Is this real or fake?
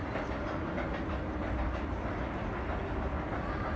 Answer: real